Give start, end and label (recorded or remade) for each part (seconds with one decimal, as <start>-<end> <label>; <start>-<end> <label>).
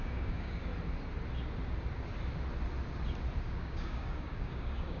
0.0-0.7 remade; 0.7-3.4 recorded; 3.4-5.0 remade